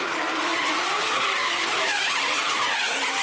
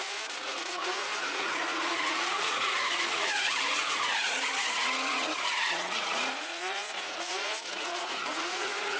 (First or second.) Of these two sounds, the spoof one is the second